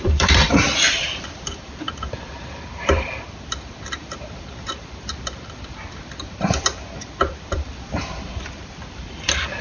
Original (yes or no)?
no